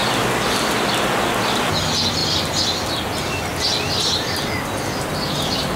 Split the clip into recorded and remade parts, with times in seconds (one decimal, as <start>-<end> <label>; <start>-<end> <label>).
0.0-5.8 recorded